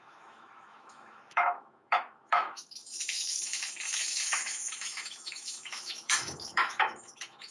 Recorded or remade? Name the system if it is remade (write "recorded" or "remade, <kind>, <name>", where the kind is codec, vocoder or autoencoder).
remade, autoencoder, DAC-VAE